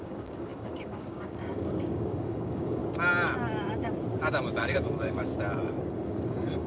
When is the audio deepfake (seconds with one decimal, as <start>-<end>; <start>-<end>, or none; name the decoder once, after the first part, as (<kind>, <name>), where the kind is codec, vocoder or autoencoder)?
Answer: 0.0-2.8 (codec, DAC); 4.6-5.3; 5.8-6.7